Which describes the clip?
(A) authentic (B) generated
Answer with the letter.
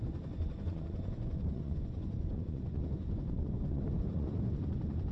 B